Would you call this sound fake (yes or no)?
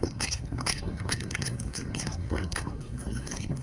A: yes